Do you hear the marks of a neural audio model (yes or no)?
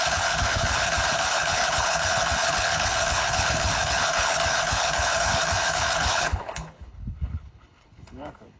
yes